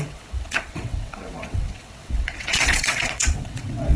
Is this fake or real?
fake